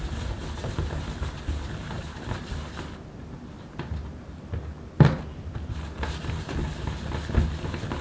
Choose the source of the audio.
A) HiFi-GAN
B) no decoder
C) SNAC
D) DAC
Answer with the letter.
B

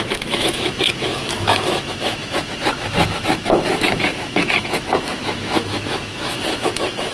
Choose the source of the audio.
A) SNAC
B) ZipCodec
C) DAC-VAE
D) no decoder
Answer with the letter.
C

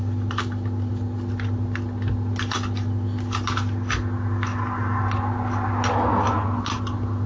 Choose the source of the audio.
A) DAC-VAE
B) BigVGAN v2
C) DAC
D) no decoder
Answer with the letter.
D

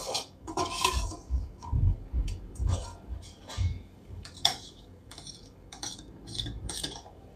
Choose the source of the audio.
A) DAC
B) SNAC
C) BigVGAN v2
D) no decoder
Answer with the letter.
A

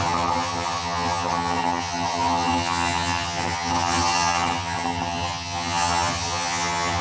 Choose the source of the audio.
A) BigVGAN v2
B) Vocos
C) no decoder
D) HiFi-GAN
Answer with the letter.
D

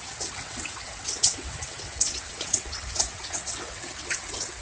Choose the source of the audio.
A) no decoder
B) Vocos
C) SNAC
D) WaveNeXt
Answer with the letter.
D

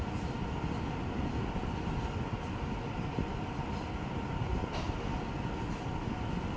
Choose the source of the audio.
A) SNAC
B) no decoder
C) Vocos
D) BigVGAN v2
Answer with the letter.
B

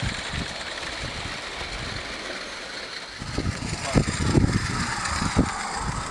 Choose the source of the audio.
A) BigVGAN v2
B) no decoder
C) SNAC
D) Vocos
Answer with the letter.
B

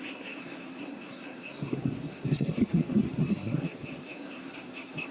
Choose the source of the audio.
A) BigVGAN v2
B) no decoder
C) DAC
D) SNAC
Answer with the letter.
D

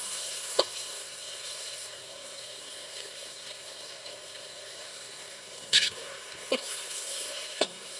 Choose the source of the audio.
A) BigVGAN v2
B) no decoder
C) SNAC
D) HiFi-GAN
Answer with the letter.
C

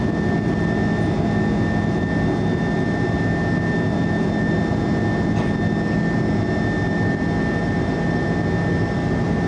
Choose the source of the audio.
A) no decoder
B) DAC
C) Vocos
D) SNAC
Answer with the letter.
A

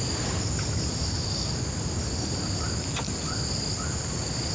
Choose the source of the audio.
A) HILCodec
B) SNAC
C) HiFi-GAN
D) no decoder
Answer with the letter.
D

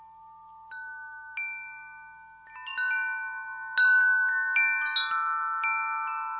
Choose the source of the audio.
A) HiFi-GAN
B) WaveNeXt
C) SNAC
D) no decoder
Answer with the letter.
D